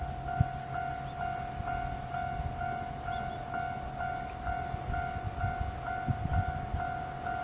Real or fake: real